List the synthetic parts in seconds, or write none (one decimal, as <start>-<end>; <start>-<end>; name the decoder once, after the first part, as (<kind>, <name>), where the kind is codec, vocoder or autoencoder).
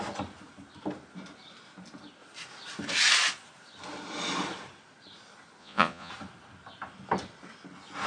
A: 5.6-6.1 (vocoder, Vocos)